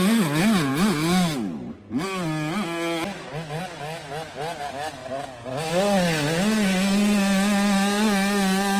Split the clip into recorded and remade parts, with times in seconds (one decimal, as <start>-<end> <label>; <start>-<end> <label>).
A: 0.0-8.8 recorded